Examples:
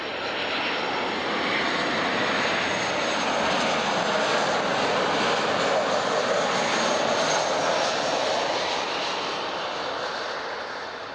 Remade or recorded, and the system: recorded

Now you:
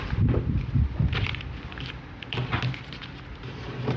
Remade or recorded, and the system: recorded